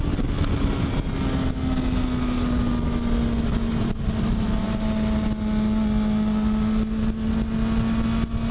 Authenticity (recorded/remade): recorded